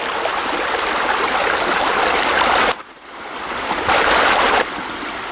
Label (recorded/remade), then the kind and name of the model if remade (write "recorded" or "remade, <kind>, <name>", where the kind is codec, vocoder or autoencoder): recorded